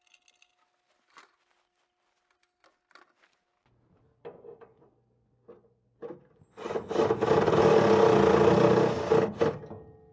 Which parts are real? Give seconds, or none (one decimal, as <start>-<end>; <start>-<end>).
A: 0.0-10.1